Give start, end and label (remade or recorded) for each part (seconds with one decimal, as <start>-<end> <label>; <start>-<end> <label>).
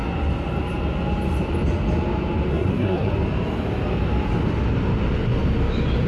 0.0-2.5 recorded; 2.5-3.1 remade; 3.1-6.1 recorded